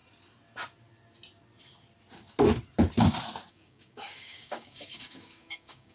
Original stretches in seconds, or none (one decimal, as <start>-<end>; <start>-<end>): 0.0-3.5